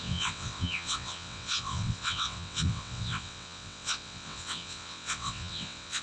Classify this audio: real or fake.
fake